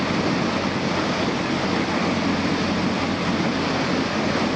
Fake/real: real